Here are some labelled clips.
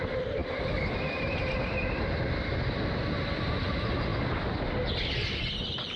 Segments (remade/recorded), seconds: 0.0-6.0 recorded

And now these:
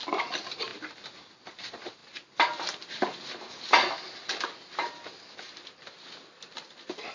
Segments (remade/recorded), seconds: 0.0-7.1 recorded

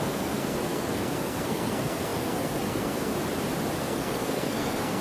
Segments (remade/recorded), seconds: 0.0-3.1 remade; 3.1-3.8 recorded; 3.8-5.0 remade

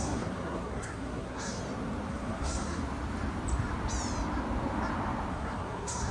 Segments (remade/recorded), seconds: 0.0-1.6 remade; 1.6-2.1 recorded; 2.1-2.8 remade; 2.8-5.3 recorded; 5.3-6.1 remade

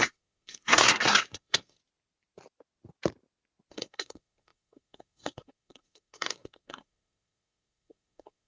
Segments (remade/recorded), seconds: 0.0-1.8 remade; 1.8-3.7 recorded; 3.7-8.5 remade

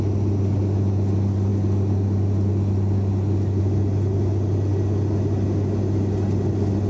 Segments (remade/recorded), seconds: 0.0-6.9 recorded

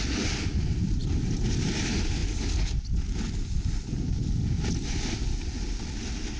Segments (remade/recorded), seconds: 0.0-6.4 recorded

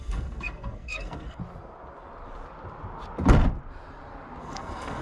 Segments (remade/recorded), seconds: 0.0-1.4 remade; 1.4-4.4 recorded; 4.4-5.0 remade